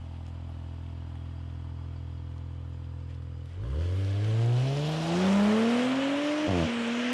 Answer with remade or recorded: recorded